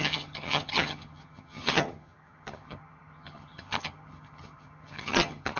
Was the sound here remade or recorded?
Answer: remade